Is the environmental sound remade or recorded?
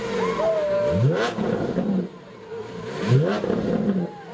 recorded